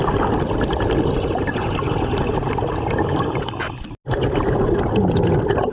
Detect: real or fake real